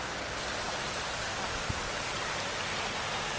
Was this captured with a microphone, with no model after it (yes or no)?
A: yes